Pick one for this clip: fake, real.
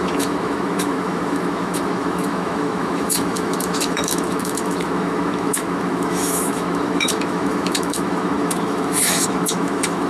fake